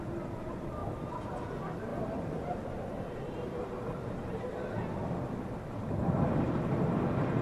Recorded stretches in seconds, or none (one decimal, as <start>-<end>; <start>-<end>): 0.0-7.4